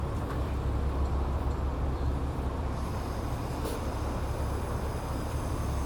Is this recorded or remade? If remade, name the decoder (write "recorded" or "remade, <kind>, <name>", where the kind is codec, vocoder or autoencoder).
remade, vocoder, BigVGAN v2